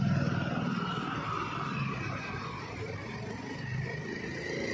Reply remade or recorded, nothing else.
recorded